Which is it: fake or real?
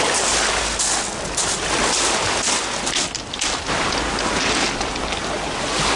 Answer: real